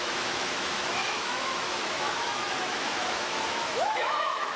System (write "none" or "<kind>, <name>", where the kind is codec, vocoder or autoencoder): autoencoder, DAC-VAE